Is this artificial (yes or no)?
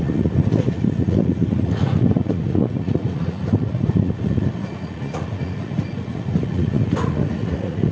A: yes